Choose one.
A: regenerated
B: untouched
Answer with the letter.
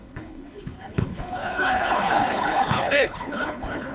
A